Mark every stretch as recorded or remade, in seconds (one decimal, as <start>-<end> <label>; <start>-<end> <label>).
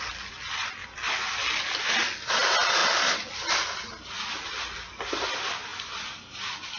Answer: 0.0-6.8 recorded